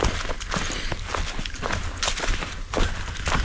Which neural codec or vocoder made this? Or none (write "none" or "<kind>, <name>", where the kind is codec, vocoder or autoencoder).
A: none